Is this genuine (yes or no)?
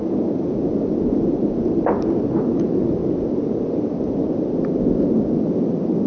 yes